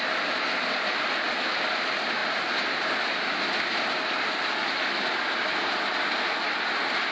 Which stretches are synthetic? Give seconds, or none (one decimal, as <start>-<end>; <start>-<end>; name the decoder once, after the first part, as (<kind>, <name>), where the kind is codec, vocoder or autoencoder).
none

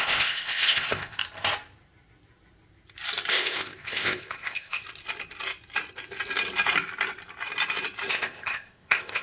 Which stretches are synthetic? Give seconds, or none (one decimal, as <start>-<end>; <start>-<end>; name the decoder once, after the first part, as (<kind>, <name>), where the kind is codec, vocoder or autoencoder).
0.0-1.2 (codec, ZipCodec); 3.3-4.8; 8.1-9.2

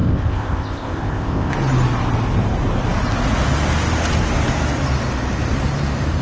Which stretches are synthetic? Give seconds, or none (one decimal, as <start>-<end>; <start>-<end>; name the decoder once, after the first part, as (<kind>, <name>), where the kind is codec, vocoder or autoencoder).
0.0-1.5 (codec, ZipCodec)

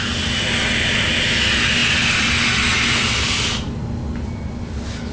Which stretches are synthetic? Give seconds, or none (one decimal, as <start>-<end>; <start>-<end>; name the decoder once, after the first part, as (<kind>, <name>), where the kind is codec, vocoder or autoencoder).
none

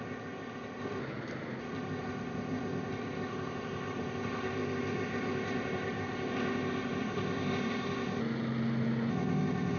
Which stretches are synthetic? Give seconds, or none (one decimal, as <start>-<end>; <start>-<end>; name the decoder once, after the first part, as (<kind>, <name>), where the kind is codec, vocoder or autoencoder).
0.0-1.0 (codec, ZipCodec); 1.6-8.2; 9.1-9.8

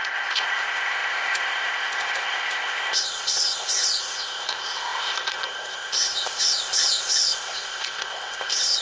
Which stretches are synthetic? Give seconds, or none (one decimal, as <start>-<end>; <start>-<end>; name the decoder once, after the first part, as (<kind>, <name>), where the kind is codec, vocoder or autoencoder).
0.0-8.8 (codec, ZipCodec)